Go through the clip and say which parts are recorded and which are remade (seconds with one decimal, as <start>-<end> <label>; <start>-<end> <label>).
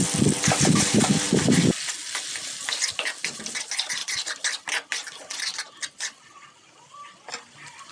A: 0.0-7.9 recorded